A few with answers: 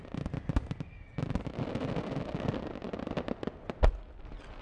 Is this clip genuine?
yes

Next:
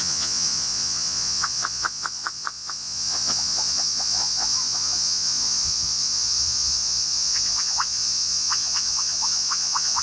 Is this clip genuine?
no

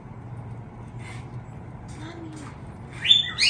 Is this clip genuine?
yes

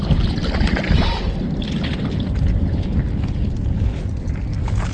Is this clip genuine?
yes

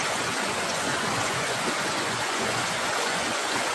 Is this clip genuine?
no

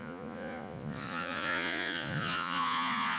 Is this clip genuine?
no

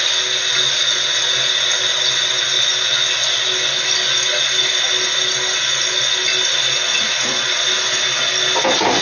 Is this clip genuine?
yes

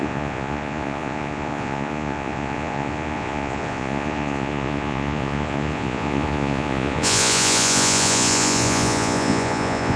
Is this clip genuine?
no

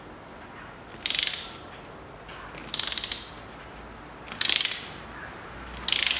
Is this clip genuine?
yes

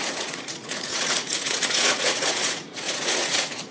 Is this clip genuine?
no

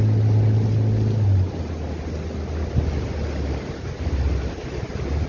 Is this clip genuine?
yes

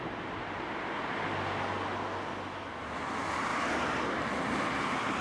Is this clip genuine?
yes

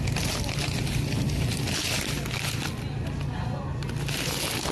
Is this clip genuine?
yes